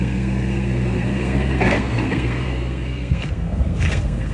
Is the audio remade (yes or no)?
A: yes